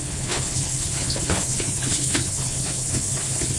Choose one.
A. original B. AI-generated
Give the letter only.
B